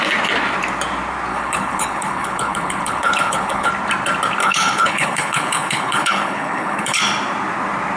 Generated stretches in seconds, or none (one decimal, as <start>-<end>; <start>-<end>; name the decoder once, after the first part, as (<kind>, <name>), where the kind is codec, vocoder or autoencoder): 1.3-3.7 (codec, HILCodec); 4.4-7.0